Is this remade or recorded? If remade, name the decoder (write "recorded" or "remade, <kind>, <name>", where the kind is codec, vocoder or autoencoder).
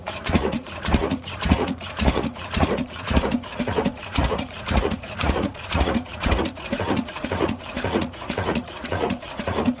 remade, vocoder, Vocos